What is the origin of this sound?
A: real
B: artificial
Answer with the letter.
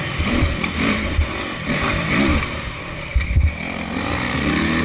A